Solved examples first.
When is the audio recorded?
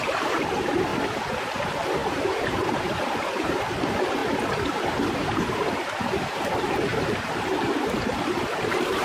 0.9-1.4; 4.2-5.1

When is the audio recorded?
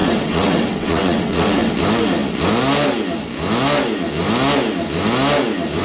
1.7-5.8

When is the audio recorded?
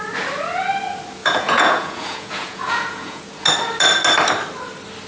0.0-1.2; 3.3-5.1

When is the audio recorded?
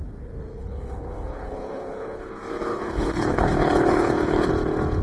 0.0-0.6; 2.3-2.7; 4.5-5.0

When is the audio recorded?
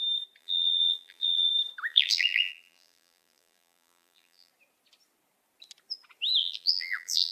0.0-0.4; 1.5-1.9; 4.5-6.4